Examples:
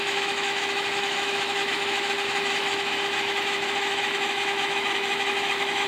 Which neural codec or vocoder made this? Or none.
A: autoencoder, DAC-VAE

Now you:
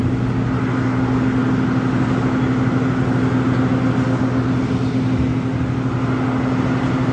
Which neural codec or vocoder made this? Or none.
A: none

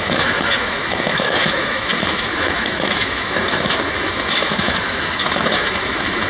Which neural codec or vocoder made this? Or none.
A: autoencoder, DAC-VAE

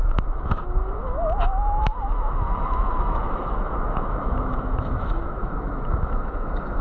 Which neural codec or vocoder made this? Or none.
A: autoencoder, DAC-VAE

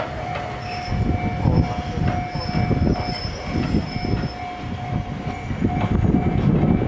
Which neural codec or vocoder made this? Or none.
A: none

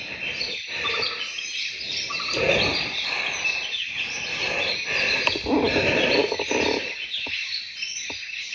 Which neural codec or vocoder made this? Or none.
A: none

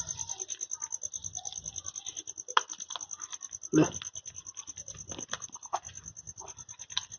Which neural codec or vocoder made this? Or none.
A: none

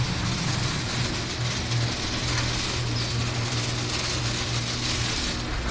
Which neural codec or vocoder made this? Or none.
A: none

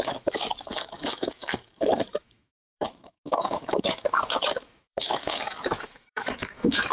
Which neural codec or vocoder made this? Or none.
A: autoencoder, DAC-VAE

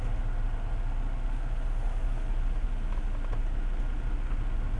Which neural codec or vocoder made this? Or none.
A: none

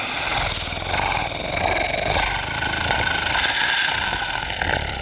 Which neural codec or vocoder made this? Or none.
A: none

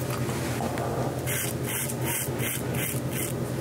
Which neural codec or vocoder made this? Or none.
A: none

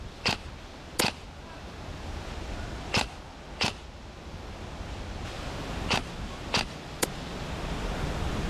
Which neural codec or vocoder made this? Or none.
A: none